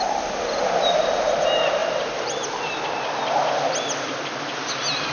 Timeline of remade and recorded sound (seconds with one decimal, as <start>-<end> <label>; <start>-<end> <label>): 0.0-5.1 recorded